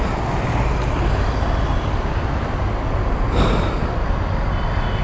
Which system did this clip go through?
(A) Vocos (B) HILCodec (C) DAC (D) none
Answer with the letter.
D